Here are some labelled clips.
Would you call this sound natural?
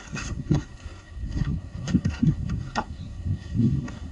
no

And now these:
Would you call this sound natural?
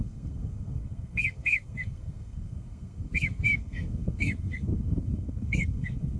no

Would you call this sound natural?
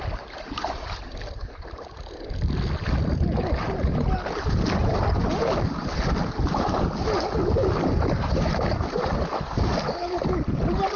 yes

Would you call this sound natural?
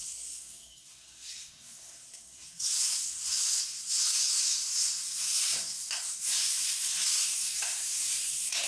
no